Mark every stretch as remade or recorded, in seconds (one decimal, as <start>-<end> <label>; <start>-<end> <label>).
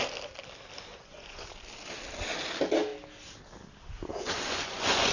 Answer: 0.0-0.9 recorded; 0.9-1.5 remade; 1.5-4.1 recorded; 4.1-5.1 remade